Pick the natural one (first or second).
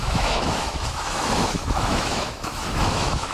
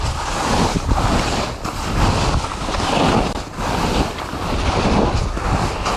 second